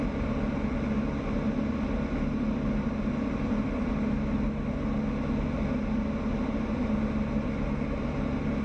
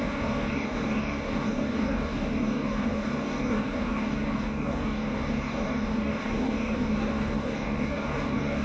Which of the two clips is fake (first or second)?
second